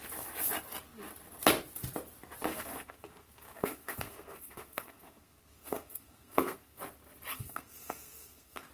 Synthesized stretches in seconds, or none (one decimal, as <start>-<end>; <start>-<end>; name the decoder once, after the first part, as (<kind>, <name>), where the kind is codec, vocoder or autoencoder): 2.5-6.8 (codec, SNAC); 7.3-8.7

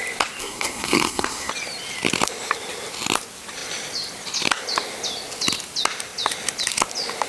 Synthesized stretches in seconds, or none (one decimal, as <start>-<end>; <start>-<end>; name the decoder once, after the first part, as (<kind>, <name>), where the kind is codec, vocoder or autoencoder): 0.4-1.5 (codec, SNAC)

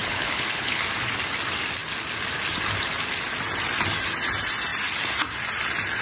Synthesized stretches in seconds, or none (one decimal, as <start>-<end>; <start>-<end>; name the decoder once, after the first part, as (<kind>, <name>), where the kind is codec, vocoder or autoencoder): 0.0-0.8 (codec, HILCodec)

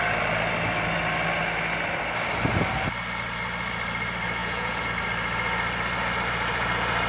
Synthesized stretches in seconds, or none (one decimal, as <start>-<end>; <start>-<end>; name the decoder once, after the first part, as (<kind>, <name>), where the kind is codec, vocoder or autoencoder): 4.4-4.9 (vocoder, Vocos)

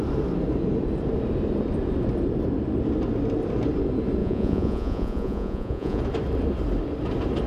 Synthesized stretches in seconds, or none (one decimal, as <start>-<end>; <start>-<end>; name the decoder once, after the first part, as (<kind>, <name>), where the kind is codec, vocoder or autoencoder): 4.2-6.0 (vocoder, Vocos)

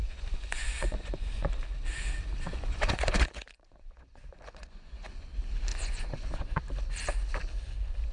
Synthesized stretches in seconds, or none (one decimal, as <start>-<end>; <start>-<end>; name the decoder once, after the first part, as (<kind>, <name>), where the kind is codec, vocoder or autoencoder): 0.0-1.5 (vocoder, Vocos); 2.5-5.3; 5.7-6.6

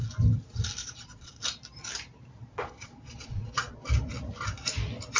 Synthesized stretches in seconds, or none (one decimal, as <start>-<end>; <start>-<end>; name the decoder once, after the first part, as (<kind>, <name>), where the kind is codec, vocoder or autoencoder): 0.8-1.4 (vocoder, Vocos); 2.4-3.9